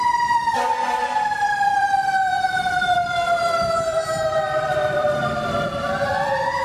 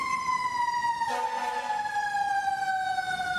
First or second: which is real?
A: second